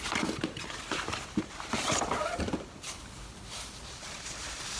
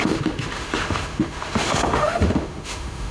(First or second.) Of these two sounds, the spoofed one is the second